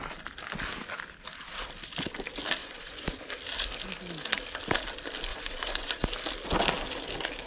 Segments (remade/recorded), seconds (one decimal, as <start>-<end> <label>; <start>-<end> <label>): 0.0-2.6 recorded; 2.6-3.2 remade; 3.2-5.3 recorded; 5.3-5.9 remade; 5.9-7.5 recorded